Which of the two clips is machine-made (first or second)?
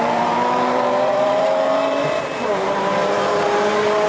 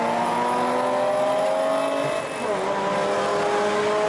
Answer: first